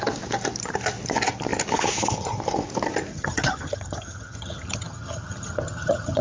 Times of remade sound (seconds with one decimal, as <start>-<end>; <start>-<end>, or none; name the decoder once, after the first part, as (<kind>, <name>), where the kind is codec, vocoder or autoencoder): 3.1-6.2 (vocoder, HiFi-GAN)